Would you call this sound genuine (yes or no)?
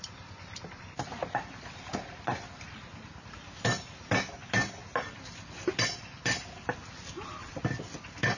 yes